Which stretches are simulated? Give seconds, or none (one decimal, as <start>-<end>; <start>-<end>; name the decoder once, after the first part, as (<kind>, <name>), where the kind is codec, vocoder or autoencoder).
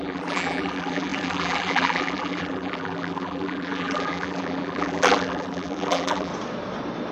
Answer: 0.0-6.3 (vocoder, BigVGAN v2)